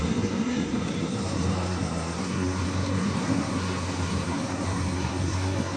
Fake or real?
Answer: fake